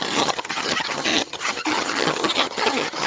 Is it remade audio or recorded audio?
remade